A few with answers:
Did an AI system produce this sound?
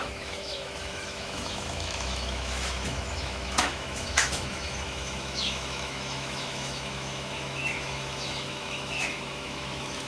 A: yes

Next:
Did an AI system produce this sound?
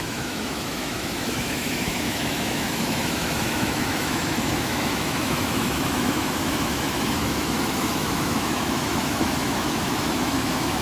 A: yes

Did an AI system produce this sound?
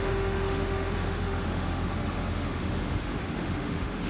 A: yes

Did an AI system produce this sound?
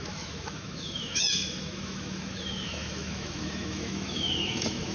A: yes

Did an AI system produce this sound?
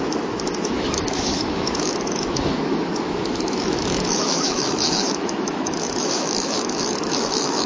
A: yes